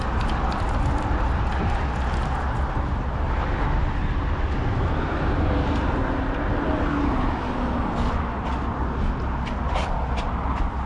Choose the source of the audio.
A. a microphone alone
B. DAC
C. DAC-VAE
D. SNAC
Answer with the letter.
A